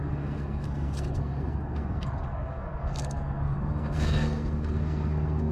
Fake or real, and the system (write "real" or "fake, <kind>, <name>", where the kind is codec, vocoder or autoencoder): fake, codec, SNAC